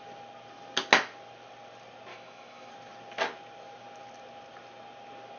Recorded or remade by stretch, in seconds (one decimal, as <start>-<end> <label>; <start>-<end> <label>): 0.0-2.1 recorded; 2.1-2.7 remade; 2.7-5.4 recorded